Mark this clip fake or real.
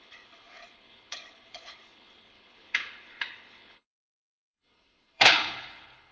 fake